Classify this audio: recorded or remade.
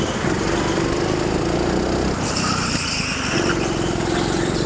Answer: recorded